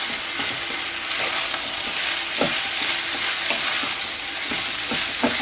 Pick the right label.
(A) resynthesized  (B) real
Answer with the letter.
B